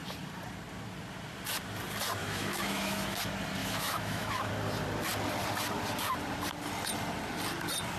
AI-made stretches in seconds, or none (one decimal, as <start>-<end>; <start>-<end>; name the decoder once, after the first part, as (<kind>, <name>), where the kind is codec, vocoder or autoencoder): 2.2-3.2 (autoencoder, DAC-VAE); 3.6-4.5